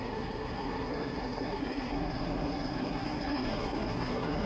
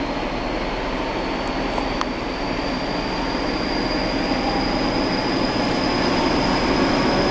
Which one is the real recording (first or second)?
second